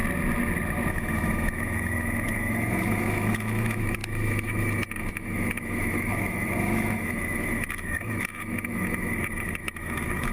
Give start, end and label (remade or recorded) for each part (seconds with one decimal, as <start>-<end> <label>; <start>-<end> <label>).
0.0-0.9 recorded; 0.9-10.3 remade